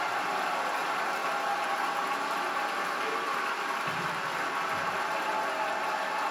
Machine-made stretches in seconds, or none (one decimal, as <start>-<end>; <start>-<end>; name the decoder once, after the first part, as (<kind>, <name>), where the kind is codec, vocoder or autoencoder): none